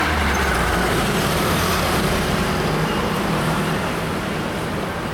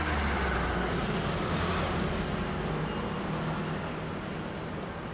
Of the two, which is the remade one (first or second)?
first